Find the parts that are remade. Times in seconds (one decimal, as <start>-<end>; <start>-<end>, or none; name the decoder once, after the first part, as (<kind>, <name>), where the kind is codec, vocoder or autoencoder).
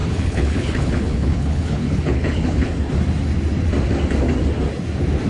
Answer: 0.0-2.7 (codec, HILCodec)